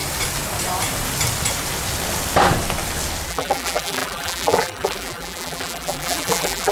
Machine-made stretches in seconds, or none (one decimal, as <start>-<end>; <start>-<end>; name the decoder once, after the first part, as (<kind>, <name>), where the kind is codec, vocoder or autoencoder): 3.3-6.7 (vocoder, BigVGAN v2)